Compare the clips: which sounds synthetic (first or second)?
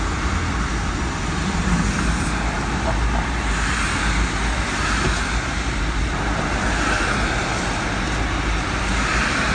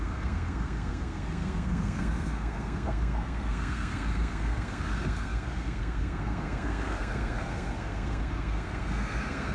second